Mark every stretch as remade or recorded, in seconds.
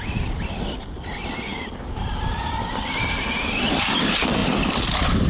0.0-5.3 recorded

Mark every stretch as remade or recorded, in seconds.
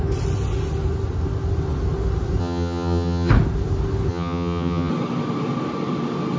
0.0-2.4 recorded; 2.4-3.3 remade; 3.3-4.1 recorded; 4.1-4.9 remade; 4.9-6.4 recorded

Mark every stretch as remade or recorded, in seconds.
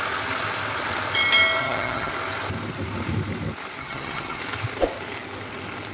0.0-1.6 recorded; 1.6-2.1 remade; 2.1-3.8 recorded; 3.8-4.4 remade; 4.4-5.9 recorded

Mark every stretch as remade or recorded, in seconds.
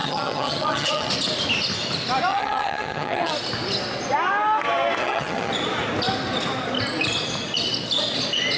0.0-1.1 remade; 1.1-2.3 recorded; 2.3-3.3 remade; 3.3-5.0 recorded; 5.0-5.5 remade; 5.5-8.6 recorded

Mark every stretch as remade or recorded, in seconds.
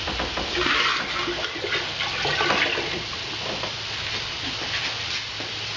0.0-5.8 recorded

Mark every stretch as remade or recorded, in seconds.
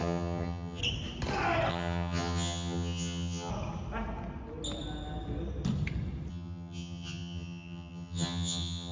0.0-0.8 remade; 0.8-1.7 recorded; 1.7-3.5 remade; 3.5-6.3 recorded; 6.3-8.9 remade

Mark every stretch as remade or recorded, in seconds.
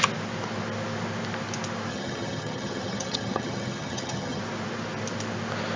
0.0-1.9 recorded; 1.9-4.4 remade; 4.4-5.8 recorded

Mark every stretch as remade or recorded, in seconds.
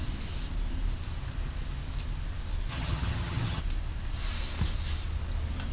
0.0-2.7 recorded; 2.7-3.6 remade; 3.6-5.7 recorded